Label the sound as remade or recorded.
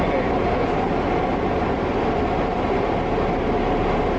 recorded